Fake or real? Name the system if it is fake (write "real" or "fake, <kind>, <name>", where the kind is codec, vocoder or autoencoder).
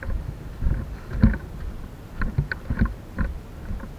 real